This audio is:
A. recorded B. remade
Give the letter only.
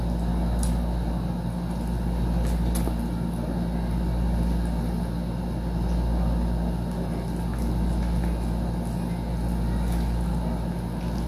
A